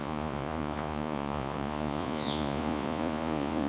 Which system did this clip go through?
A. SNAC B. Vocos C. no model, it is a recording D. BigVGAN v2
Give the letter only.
B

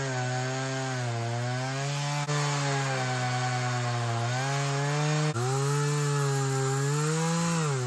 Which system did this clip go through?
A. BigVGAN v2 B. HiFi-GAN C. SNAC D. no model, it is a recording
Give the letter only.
D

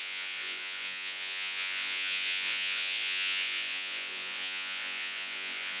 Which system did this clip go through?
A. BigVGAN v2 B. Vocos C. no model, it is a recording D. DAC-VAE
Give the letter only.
B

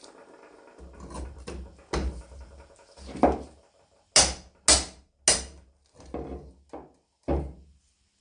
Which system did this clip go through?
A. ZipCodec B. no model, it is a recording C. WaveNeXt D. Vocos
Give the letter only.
B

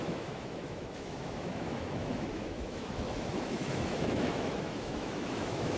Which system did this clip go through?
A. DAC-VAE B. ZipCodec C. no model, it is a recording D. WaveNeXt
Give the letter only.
A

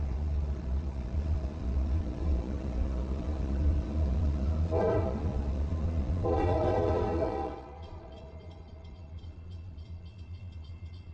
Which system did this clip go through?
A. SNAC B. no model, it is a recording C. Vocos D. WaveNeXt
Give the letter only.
C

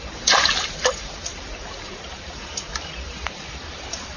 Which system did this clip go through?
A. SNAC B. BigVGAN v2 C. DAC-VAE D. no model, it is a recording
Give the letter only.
B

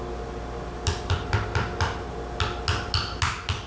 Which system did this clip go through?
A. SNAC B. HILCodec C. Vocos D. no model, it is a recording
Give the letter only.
D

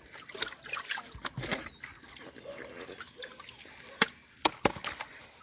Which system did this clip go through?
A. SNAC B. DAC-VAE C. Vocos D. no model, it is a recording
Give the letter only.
D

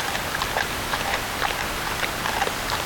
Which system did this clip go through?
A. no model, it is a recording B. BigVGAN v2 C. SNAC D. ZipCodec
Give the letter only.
B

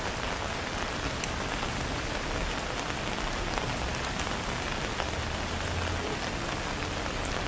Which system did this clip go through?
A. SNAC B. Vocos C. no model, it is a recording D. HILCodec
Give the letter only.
C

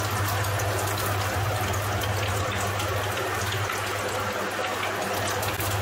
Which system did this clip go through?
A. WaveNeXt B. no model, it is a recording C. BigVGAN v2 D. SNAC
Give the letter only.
B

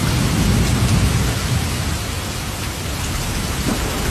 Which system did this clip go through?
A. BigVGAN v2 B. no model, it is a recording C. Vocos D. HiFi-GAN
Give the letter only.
B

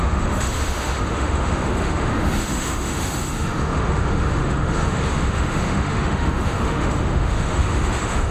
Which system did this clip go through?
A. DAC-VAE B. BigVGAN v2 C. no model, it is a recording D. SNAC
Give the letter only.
A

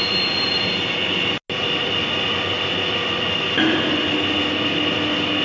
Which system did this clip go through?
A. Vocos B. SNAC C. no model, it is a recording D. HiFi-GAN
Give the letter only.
C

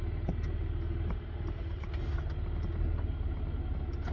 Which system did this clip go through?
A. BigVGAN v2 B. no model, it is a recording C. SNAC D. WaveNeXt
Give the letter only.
B